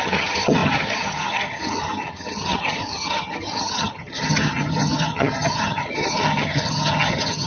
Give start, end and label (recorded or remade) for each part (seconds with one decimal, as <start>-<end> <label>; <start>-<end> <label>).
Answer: 0.0-7.5 remade